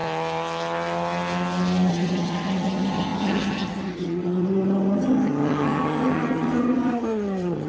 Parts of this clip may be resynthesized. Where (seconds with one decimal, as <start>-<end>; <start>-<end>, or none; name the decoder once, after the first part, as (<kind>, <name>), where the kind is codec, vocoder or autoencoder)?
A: 1.9-7.7 (vocoder, HiFi-GAN)